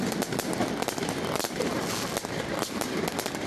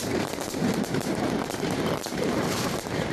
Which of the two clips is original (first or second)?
first